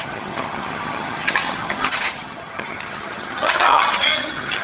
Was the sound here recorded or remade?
remade